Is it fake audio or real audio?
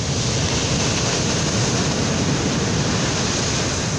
real